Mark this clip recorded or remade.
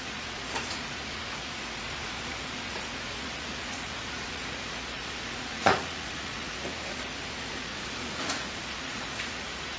remade